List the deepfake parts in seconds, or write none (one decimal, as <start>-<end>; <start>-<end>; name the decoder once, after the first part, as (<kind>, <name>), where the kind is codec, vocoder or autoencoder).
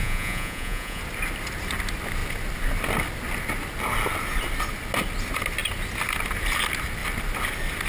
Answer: 0.0-1.0 (vocoder, Vocos)